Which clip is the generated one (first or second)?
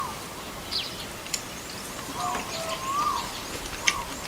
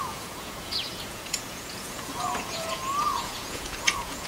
second